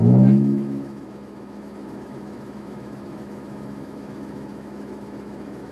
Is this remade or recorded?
remade